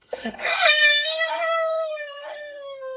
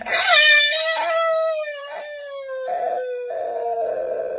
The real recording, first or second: second